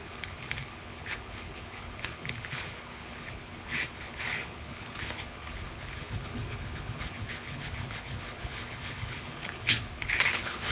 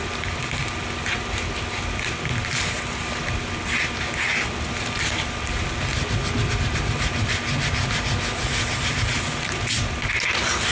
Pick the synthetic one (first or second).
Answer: first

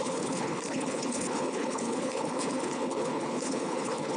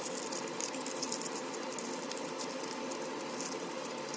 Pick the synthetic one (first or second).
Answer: first